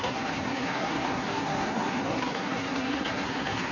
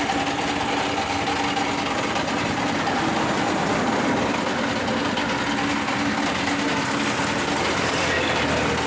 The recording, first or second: second